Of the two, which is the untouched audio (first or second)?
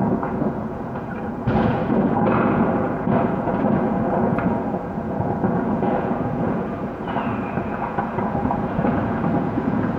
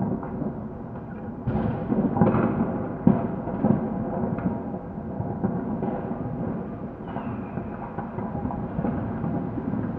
second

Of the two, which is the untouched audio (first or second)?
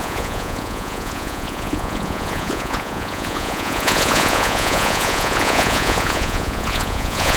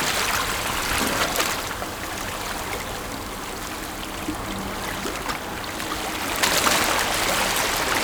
second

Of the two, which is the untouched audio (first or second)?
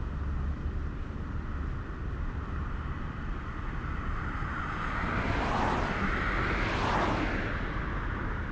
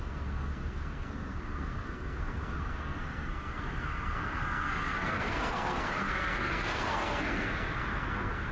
first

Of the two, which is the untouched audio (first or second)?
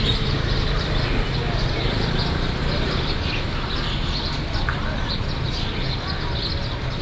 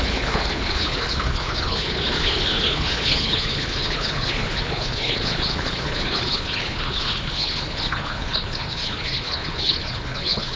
first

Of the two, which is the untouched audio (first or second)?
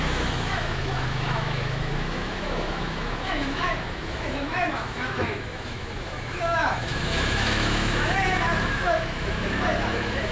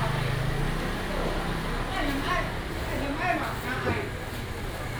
second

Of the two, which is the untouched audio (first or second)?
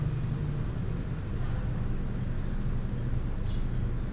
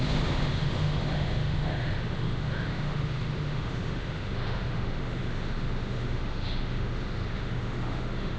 first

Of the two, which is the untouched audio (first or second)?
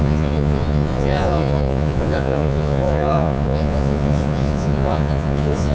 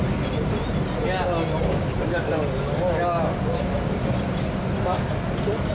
second